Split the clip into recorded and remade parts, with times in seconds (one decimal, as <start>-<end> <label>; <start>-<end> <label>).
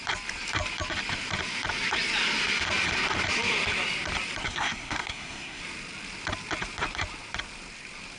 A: 0.0-4.4 recorded; 4.4-5.6 remade; 5.6-8.2 recorded